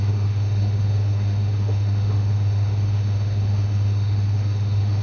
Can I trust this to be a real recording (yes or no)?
no